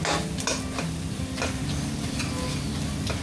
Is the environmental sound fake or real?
real